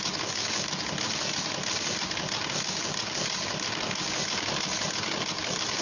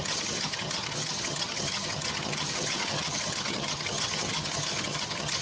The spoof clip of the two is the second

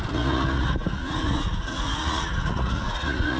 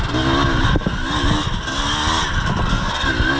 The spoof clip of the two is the first